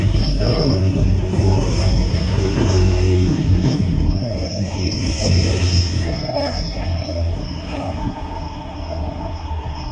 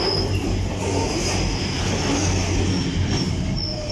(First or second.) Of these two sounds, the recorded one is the second